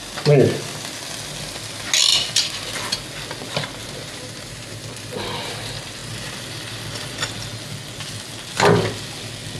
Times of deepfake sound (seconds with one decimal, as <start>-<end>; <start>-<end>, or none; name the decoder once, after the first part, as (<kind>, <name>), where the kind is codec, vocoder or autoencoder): 3.8-5.1 (vocoder, BigVGAN v2)